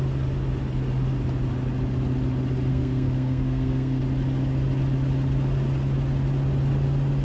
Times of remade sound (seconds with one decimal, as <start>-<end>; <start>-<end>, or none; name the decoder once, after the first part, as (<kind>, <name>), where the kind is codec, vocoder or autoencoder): 2.7-4.0 (codec, SNAC)